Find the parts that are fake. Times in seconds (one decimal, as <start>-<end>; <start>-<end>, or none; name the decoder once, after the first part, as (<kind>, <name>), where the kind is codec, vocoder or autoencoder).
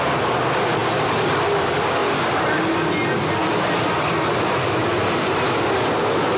2.0-2.7 (vocoder, BigVGAN v2); 3.4-6.0